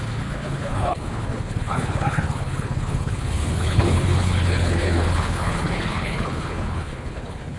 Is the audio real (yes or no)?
no